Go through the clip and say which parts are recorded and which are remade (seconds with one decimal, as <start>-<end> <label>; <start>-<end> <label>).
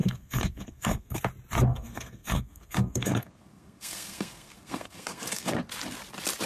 0.0-1.2 remade; 1.2-1.7 recorded; 1.7-5.6 remade; 5.6-6.5 recorded